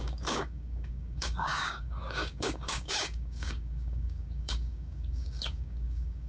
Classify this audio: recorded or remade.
remade